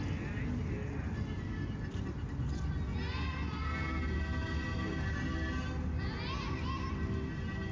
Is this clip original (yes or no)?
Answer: yes